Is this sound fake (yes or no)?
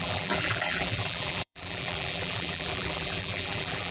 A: yes